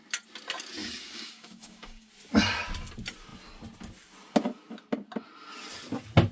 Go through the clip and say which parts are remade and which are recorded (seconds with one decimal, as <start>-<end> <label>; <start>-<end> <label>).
0.0-0.8 recorded; 0.8-2.1 remade; 2.1-6.3 recorded